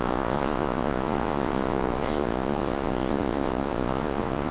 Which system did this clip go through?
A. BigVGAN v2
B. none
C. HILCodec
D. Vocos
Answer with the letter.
D